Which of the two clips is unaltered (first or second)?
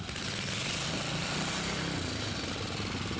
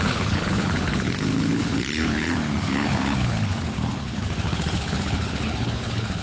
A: first